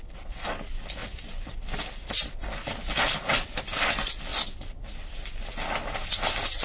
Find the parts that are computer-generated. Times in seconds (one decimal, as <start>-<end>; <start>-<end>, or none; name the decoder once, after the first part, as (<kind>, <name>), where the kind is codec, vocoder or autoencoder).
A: 1.0-3.6 (vocoder, BigVGAN v2); 4.3-5.1